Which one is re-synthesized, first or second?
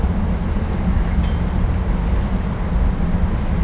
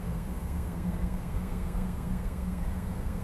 second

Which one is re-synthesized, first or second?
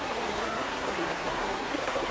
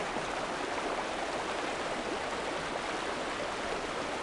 first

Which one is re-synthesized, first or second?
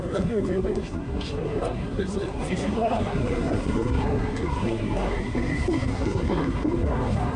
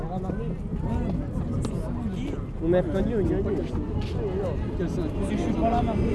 first